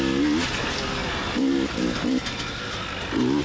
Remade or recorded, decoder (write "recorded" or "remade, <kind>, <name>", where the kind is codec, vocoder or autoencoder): recorded